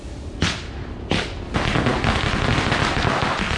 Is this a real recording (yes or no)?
yes